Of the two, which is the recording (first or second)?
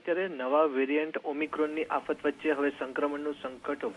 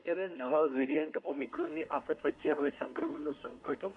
first